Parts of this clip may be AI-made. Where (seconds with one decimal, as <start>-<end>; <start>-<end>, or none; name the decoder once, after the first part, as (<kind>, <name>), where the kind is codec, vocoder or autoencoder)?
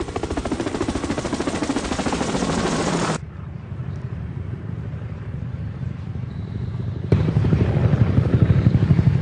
3.8-7.7 (vocoder, BigVGAN v2)